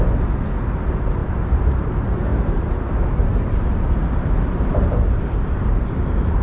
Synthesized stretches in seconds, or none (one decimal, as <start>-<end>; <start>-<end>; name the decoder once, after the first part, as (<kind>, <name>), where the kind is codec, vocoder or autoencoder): 1.2-1.9 (vocoder, BigVGAN v2); 2.3-6.4